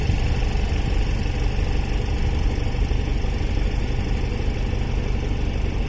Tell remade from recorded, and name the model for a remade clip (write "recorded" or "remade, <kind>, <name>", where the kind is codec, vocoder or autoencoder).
recorded